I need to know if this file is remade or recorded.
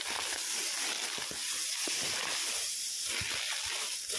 recorded